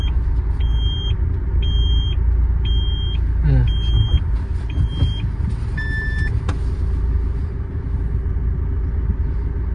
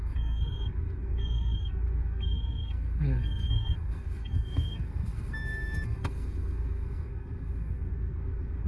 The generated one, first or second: second